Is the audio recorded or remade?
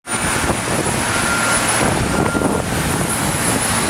recorded